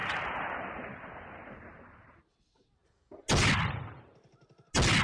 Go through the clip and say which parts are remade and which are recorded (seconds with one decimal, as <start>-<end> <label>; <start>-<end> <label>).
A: 0.0-5.0 recorded

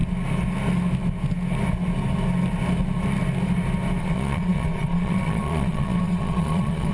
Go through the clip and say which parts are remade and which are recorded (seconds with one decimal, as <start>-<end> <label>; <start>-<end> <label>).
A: 0.0-4.0 recorded; 4.0-6.9 remade